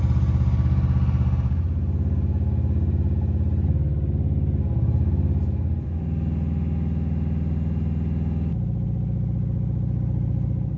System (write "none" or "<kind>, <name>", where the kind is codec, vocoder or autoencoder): none